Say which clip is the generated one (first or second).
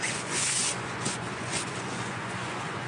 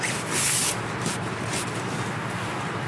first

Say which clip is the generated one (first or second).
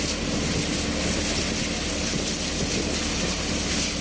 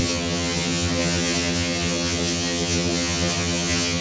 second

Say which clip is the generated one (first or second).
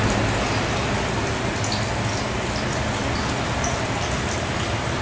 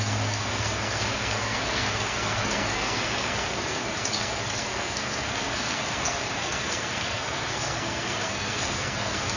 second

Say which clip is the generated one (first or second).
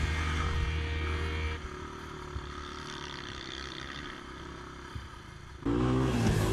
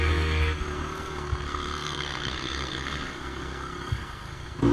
second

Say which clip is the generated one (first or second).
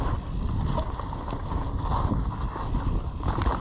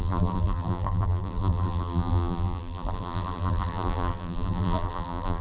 second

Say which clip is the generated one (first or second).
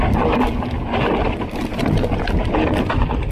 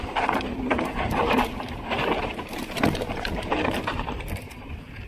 second